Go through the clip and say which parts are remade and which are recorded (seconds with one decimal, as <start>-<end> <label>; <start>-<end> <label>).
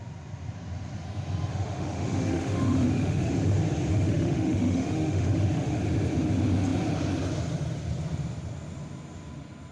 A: 0.0-1.5 recorded; 1.5-3.3 remade; 3.3-3.9 recorded; 3.9-5.8 remade; 5.8-9.7 recorded